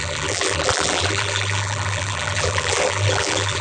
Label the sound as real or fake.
fake